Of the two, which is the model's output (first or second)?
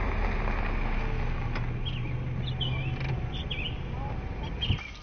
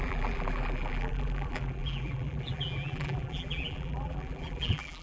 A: second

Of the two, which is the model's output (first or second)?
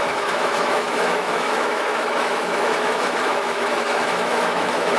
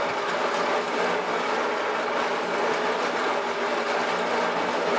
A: first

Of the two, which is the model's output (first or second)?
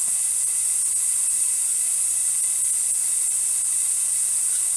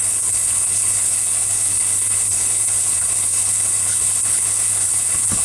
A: second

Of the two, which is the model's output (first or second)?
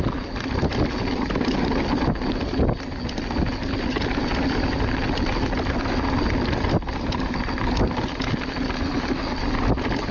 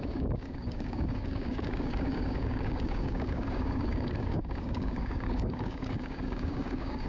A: second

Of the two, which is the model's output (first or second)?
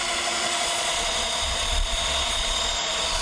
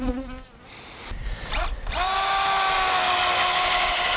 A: first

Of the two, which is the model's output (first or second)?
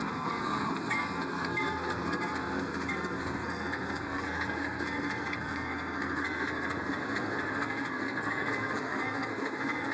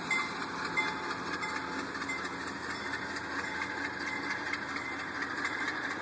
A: first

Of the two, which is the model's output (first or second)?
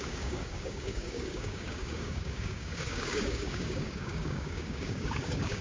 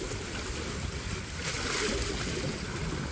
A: first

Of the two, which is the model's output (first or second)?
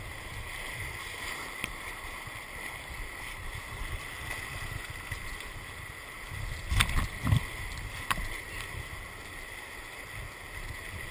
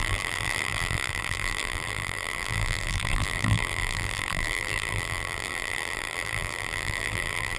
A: second